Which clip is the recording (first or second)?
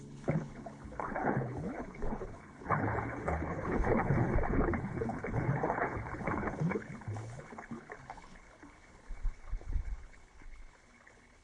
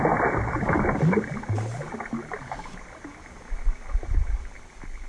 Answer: second